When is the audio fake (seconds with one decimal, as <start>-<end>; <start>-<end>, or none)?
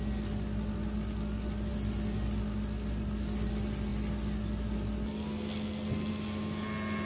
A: none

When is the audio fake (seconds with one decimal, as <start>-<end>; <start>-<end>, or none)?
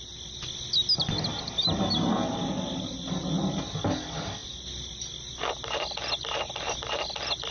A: none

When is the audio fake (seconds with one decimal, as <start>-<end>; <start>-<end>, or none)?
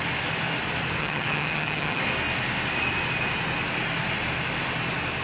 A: 1.0-2.0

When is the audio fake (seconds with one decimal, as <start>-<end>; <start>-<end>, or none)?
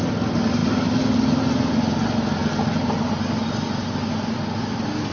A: none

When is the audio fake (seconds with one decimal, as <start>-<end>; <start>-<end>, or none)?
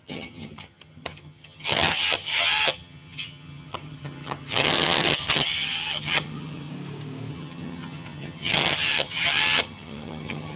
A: 0.0-6.7; 7.3-10.6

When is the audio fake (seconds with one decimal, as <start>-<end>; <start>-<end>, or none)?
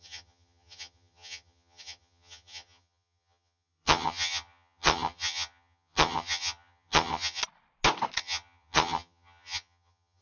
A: 0.0-7.4; 8.2-10.2